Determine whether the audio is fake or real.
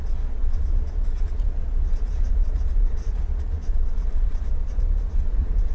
fake